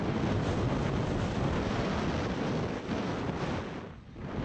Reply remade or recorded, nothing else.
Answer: recorded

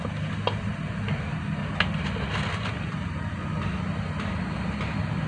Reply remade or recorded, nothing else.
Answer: recorded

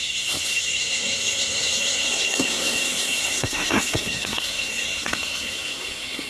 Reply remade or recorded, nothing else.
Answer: remade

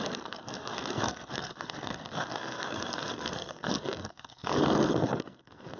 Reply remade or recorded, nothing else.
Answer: remade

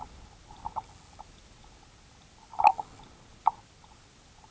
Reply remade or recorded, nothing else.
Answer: recorded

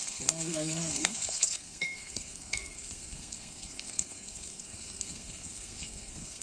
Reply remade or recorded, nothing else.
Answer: remade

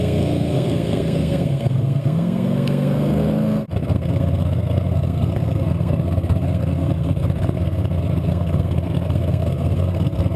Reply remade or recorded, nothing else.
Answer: remade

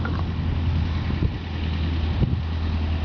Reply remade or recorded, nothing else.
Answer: recorded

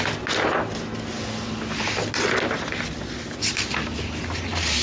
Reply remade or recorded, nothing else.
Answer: recorded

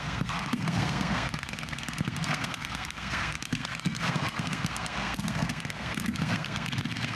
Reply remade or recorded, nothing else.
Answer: remade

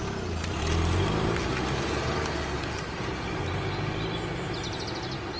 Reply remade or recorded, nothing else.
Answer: recorded